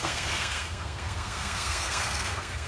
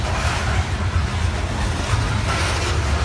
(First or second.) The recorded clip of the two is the second